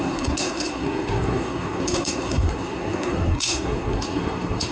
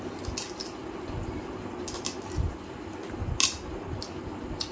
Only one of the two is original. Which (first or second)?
second